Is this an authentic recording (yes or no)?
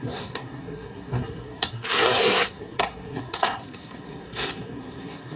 no